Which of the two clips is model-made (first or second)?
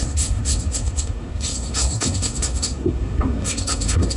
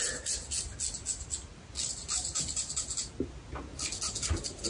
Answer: first